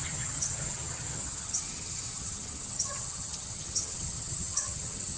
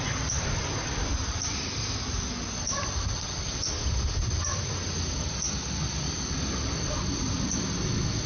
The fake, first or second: first